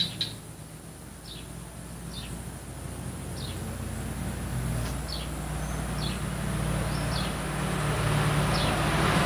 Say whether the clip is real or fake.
real